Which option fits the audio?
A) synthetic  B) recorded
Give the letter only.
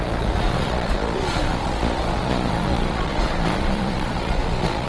A